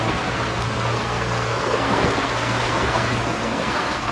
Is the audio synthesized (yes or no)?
yes